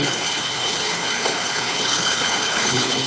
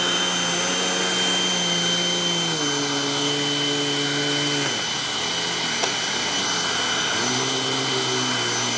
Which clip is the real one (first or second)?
second